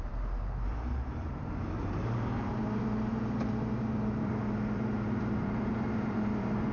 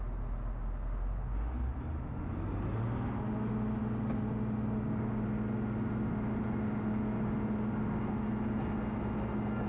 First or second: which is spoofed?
first